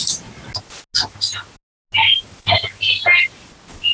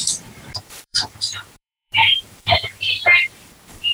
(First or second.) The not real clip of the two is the second